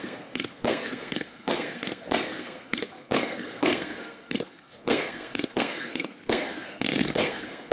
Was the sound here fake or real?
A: fake